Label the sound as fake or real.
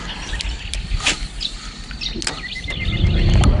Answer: real